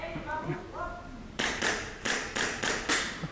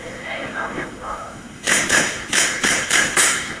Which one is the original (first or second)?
first